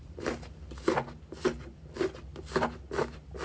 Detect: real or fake real